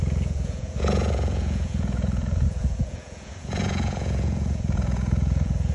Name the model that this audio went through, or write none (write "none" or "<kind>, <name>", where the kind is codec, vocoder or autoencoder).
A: vocoder, Vocos